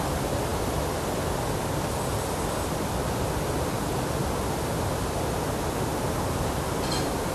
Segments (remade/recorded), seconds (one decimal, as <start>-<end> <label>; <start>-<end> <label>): 0.0-5.9 recorded; 5.9-7.3 remade